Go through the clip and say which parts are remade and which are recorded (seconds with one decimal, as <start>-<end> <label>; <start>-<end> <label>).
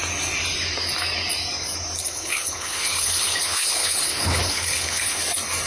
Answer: 0.0-2.0 recorded; 2.0-5.2 remade; 5.2-5.7 recorded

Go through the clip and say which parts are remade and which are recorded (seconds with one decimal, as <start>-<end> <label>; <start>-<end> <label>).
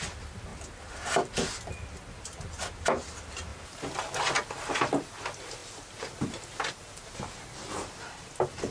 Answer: 0.0-8.7 recorded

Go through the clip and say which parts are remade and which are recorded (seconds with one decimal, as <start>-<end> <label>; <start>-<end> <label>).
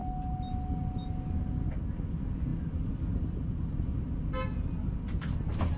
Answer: 0.0-5.8 recorded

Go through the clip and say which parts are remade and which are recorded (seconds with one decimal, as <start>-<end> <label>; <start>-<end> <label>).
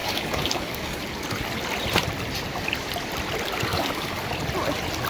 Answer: 0.0-1.0 remade; 1.0-3.7 recorded; 3.7-4.3 remade; 4.3-5.1 recorded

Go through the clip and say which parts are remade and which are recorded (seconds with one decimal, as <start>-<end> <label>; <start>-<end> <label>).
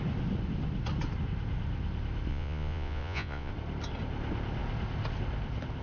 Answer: 0.0-2.3 recorded; 2.3-3.5 remade; 3.5-5.8 recorded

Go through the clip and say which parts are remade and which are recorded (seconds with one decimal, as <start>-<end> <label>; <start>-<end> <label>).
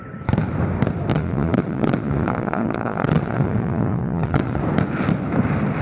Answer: 0.0-1.1 recorded; 1.1-4.6 remade; 4.6-5.8 recorded